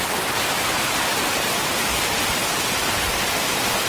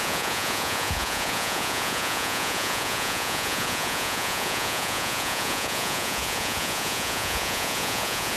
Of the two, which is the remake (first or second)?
second